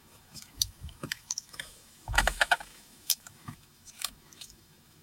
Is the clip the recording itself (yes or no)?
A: no